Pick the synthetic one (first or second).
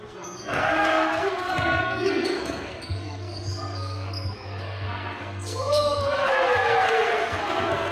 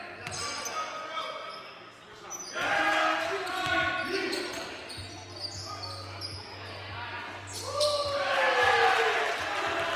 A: first